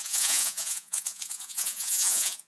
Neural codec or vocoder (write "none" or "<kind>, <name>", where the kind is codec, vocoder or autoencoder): vocoder, Vocos